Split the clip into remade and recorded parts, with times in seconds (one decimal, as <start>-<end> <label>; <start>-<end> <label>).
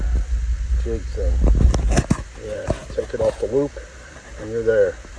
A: 0.0-5.2 recorded